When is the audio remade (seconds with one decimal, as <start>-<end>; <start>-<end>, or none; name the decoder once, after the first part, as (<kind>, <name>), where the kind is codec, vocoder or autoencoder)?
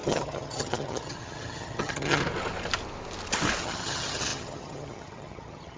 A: 0.0-2.2 (vocoder, HiFi-GAN); 3.6-5.8